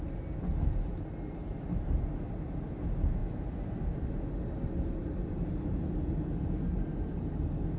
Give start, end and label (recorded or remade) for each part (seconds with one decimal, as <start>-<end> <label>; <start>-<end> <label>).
0.0-7.8 recorded